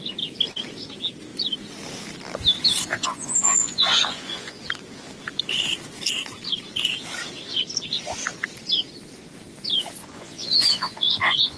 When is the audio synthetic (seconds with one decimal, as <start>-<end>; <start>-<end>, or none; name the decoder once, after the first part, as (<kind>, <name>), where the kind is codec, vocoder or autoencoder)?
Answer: 2.9-4.6 (vocoder, Vocos); 10.0-11.6